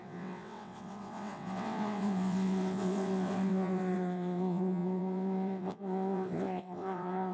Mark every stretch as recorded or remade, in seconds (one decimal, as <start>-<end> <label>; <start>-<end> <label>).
0.0-7.3 remade